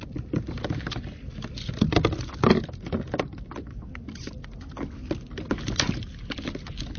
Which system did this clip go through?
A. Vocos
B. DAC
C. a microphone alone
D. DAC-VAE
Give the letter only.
C